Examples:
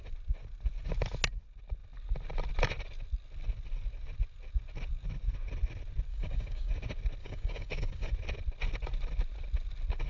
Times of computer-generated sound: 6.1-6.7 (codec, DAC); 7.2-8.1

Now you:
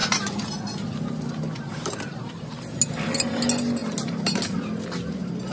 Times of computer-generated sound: none

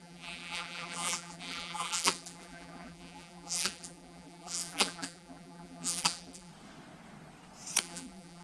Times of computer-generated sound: 0.0-6.5 (vocoder, BigVGAN v2); 7.8-8.4

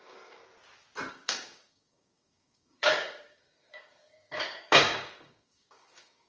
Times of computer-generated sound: 0.0-0.4 (codec, DAC); 1.1-6.3

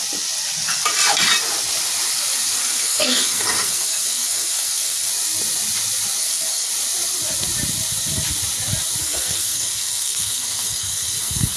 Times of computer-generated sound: 2.6-5.1 (codec, SNAC); 6.2-6.7; 9.0-11.6

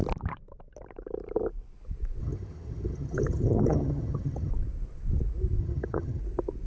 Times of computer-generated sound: 2.2-4.5 (vocoder, HiFi-GAN); 5.6-6.2